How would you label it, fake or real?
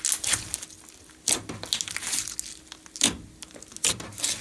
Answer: real